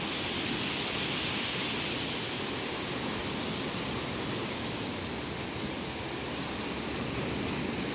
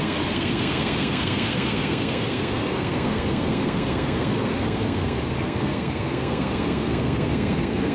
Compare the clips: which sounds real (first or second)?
first